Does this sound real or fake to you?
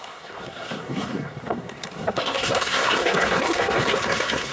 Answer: fake